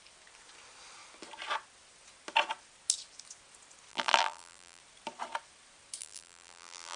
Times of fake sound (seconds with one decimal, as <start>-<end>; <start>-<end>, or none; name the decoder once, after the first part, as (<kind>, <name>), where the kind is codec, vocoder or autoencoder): 3.9-4.8 (vocoder, BigVGAN v2); 6.0-7.0